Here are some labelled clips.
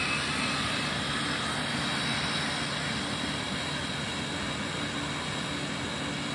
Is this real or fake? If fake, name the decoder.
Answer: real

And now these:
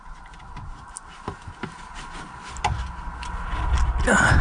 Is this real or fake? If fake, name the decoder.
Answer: real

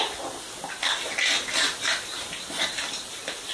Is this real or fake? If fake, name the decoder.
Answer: real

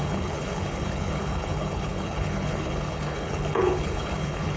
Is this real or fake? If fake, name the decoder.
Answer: fake, codec, HILCodec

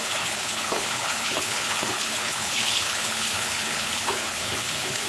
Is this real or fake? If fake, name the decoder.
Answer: fake, codec, HILCodec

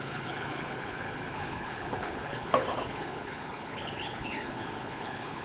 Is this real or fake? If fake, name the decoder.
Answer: fake, codec, HILCodec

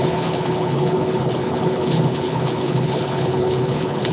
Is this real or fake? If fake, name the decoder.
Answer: fake, codec, HILCodec